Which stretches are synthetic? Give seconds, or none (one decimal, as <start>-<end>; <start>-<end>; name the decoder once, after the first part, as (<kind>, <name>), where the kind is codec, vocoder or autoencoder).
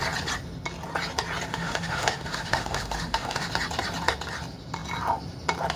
1.5-3.5 (autoencoder, DAC-VAE)